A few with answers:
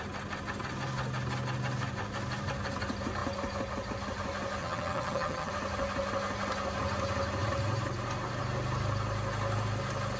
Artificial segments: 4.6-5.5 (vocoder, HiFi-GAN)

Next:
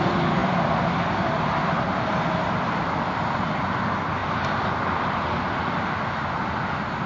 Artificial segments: 0.4-2.0 (vocoder, BigVGAN v2); 4.2-5.8

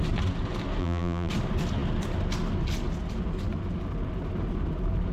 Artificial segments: 0.8-1.3 (vocoder, BigVGAN v2)

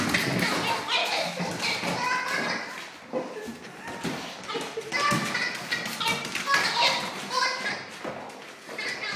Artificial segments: 1.0-1.5 (autoencoder, DAC-VAE)

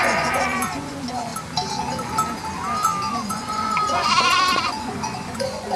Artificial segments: 0.0-1.3 (vocoder, Vocos); 3.1-5.8